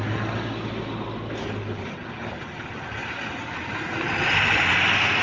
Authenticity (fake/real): real